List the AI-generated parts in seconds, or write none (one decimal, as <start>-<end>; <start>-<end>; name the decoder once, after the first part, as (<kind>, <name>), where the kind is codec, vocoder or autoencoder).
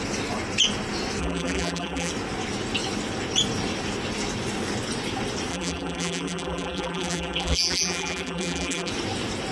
1.2-2.1 (vocoder, BigVGAN v2); 5.5-8.9